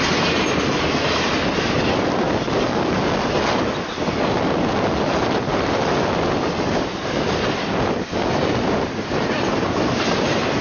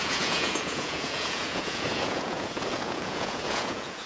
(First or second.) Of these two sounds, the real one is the first